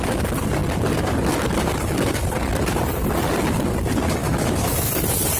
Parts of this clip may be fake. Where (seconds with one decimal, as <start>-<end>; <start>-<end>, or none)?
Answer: 4.2-4.9